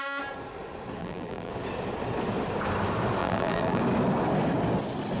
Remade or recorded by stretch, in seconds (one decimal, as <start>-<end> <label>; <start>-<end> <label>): 0.0-1.0 recorded; 1.0-1.5 remade; 1.5-3.2 recorded; 3.2-3.8 remade; 3.8-5.2 recorded